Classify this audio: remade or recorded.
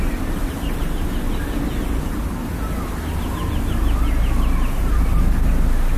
recorded